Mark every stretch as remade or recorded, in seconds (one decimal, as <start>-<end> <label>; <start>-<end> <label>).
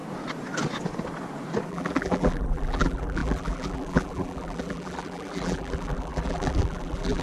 0.0-1.7 recorded; 1.7-7.2 remade